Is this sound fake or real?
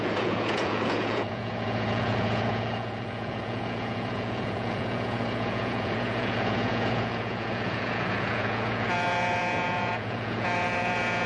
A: fake